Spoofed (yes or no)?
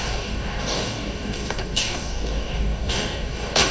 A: yes